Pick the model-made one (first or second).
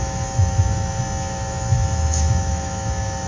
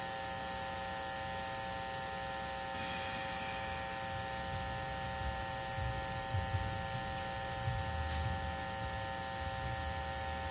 first